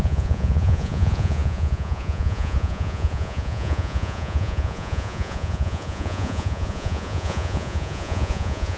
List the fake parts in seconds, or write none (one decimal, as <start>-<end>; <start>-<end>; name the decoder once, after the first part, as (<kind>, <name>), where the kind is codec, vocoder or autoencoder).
0.0-8.8 (vocoder, Vocos)